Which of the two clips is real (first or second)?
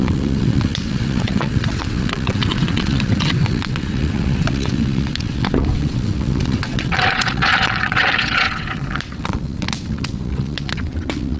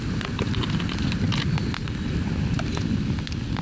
second